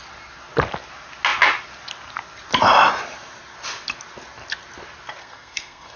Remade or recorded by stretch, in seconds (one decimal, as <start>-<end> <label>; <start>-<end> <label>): 0.0-5.2 recorded; 5.2-6.0 remade